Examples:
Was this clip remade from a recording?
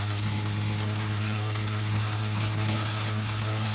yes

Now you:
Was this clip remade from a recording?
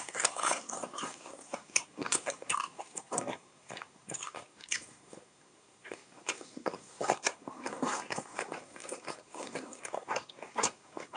yes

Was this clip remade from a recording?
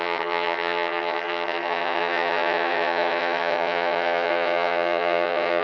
yes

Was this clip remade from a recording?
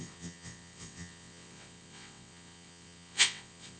yes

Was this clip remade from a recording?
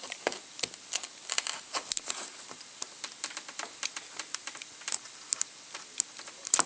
no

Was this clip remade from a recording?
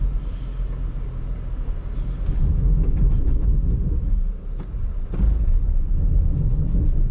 no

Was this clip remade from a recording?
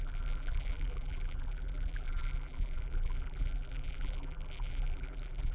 yes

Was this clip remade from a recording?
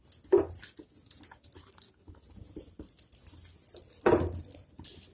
no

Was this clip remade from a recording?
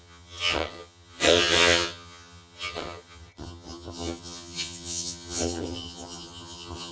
yes